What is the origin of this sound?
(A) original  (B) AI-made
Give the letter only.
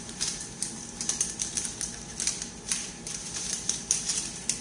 B